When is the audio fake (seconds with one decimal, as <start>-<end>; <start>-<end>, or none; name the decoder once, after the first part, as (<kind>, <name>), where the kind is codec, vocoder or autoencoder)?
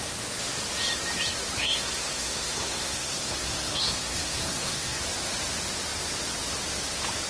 1.6-5.0 (codec, SNAC)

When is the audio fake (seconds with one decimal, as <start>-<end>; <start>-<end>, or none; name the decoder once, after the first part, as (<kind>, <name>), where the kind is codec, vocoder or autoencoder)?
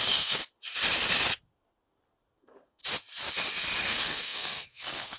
0.0-0.4 (codec, SNAC); 2.4-2.8; 3.9-5.2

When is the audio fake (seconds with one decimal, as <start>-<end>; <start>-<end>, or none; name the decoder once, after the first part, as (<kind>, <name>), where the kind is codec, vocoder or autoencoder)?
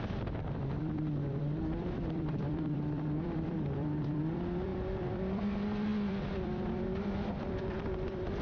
0.0-8.4 (vocoder, BigVGAN v2)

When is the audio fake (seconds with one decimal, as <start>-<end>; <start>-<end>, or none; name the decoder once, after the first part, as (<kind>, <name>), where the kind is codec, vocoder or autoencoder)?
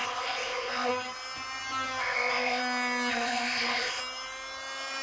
0.0-0.9 (codec, ZipCodec); 2.0-2.6; 3.1-4.0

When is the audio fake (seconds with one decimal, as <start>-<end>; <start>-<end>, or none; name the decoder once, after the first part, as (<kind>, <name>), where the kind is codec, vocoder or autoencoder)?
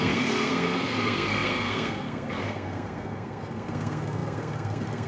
0.0-5.1 (codec, SNAC)